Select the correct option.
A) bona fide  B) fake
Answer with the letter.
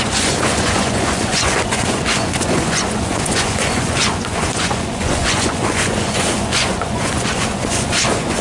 B